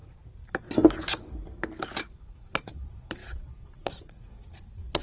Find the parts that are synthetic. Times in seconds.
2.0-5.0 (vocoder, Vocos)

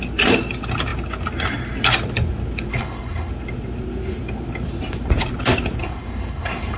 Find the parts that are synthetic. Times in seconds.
2.7-3.3 (codec, HILCodec); 5.8-6.8